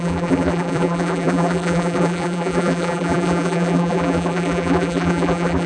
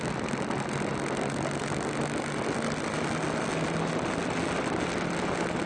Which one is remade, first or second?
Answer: first